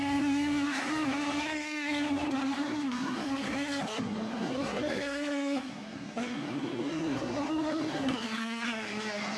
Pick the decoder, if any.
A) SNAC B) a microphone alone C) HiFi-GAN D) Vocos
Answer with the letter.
A